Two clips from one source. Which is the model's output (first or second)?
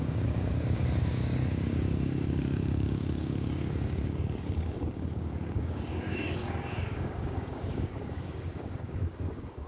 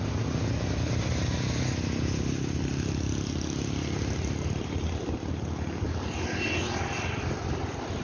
first